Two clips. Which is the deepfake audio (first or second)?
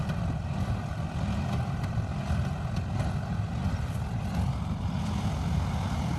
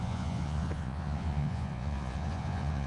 second